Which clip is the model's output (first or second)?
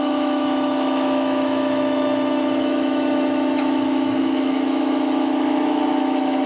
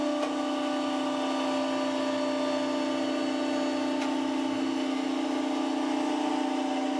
first